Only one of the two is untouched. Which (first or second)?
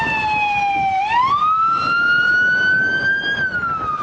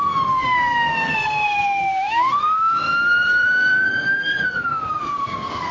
first